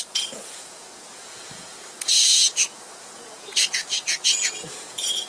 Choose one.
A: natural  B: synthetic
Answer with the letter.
B